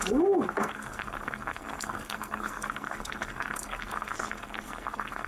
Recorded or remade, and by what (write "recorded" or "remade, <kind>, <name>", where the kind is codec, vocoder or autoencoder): remade, codec, SNAC